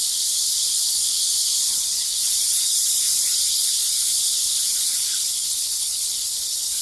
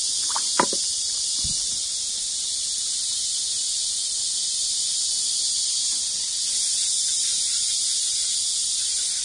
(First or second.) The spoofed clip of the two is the first